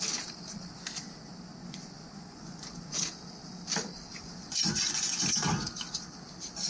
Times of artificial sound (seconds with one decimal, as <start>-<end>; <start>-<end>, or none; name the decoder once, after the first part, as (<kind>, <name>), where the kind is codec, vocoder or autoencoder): 1.6-3.0 (vocoder, Vocos); 4.1-5.2